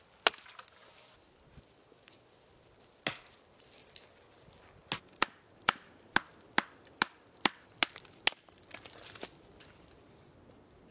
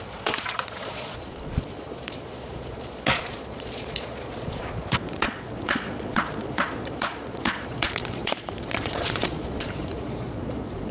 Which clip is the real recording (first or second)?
first